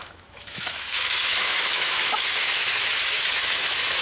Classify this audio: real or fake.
fake